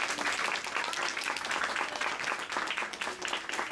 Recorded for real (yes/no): yes